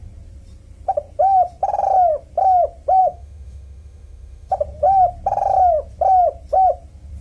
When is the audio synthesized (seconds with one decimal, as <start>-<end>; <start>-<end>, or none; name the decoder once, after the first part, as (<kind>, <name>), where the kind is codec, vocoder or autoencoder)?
3.0-4.5 (autoencoder, DAC-VAE)